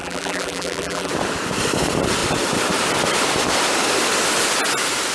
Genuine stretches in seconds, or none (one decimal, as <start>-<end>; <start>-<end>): 1.1-5.1